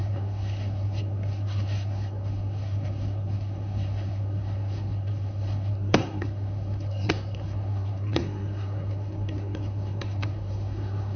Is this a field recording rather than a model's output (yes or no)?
no